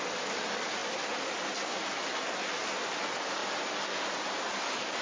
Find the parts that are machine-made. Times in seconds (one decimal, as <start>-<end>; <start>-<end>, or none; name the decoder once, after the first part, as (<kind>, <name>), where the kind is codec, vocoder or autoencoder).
none